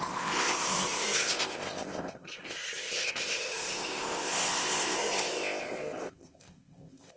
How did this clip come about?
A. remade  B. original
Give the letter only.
A